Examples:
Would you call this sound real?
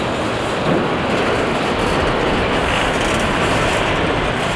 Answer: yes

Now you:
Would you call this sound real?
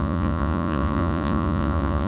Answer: no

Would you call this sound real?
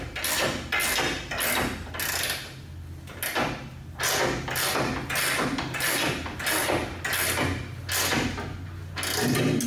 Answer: yes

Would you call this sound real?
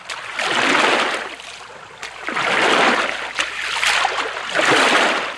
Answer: yes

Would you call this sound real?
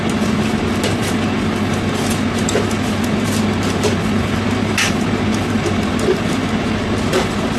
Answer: yes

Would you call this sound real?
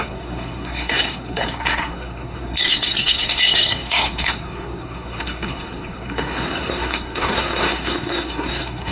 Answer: no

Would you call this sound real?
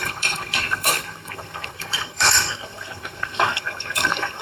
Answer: no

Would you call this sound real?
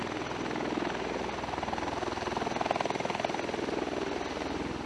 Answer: yes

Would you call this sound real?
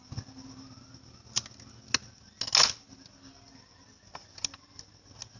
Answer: yes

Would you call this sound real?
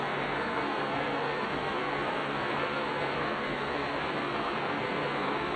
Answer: no